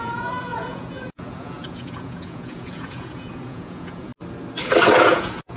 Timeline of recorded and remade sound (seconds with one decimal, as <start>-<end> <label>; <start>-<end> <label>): 0.0-4.1 remade; 4.1-5.0 recorded; 5.0-5.6 remade

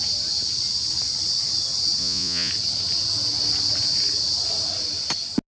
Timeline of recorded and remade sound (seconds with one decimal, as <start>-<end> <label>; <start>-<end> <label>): 0.0-2.0 recorded; 2.0-2.5 remade; 2.5-5.5 recorded

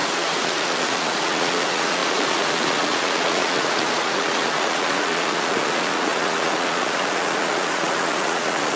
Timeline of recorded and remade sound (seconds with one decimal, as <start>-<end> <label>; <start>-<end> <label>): 0.0-8.8 remade

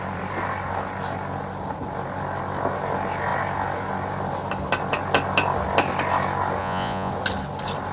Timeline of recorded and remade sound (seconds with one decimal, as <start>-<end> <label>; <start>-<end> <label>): 0.0-6.6 recorded; 6.6-7.1 remade; 7.1-7.9 recorded

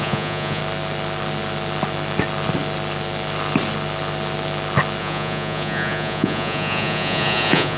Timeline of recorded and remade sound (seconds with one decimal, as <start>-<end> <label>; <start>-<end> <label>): 0.0-0.6 remade; 0.6-5.0 recorded; 5.0-7.8 remade

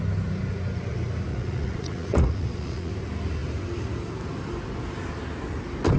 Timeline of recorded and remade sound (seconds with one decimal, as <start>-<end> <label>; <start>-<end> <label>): 0.0-1.3 recorded; 1.3-2.9 remade; 2.9-6.0 recorded

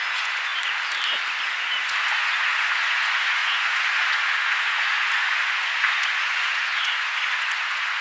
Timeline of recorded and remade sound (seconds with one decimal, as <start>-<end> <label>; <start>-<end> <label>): 0.0-0.5 remade; 0.5-1.4 recorded; 1.4-8.0 remade